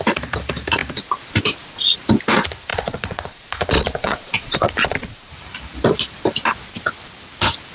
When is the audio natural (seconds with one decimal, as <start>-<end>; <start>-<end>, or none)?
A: 0.0-2.7; 5.3-7.7